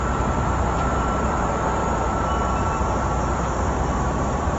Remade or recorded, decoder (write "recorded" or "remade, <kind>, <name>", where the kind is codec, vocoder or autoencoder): remade, vocoder, BigVGAN v2